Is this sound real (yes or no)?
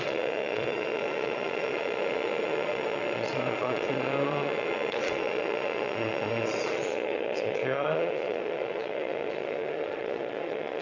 no